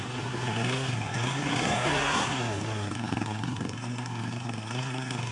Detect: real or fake fake